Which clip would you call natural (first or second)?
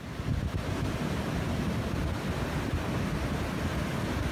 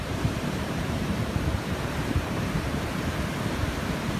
first